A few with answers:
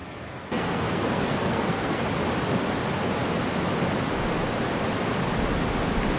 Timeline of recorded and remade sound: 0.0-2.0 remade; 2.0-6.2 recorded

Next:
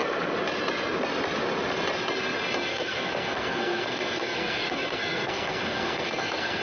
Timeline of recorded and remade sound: 0.0-2.7 recorded; 2.7-6.6 remade

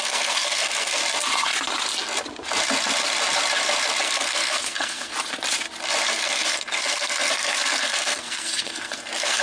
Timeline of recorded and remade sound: 0.0-1.0 remade; 1.0-4.0 recorded; 4.0-5.1 remade; 5.1-6.1 recorded; 6.1-9.4 remade

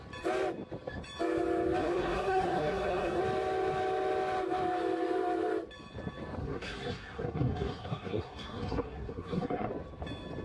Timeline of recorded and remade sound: 0.0-1.8 recorded; 1.8-3.2 remade; 3.2-6.4 recorded; 6.4-9.7 remade; 9.7-10.4 recorded